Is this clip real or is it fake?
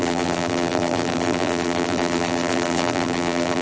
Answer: fake